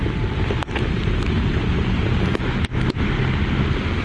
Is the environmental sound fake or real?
real